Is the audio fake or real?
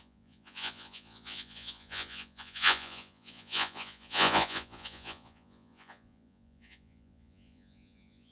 fake